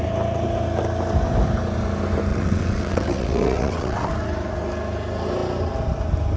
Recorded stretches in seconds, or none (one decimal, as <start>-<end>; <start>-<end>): 0.0-2.3; 4.1-6.4